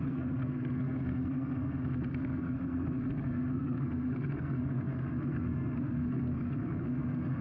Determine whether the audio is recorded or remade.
remade